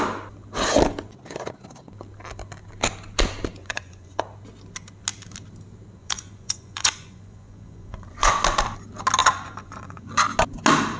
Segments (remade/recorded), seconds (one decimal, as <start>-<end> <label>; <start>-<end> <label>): 0.0-3.6 recorded; 3.6-4.2 remade; 4.2-6.0 recorded; 6.0-8.3 remade; 8.3-9.2 recorded; 9.2-10.1 remade; 10.1-11.0 recorded